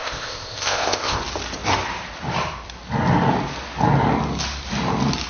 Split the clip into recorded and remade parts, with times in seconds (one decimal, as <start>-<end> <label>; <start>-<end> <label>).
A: 0.0-1.2 remade; 1.2-5.3 recorded